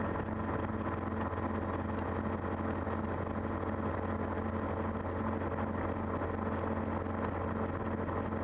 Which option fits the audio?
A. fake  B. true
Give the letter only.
B